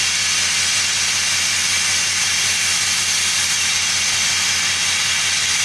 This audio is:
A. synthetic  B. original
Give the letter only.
B